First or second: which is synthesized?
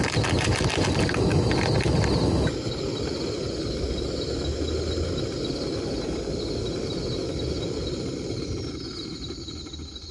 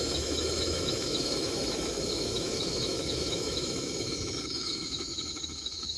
second